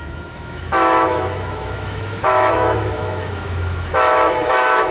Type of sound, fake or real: fake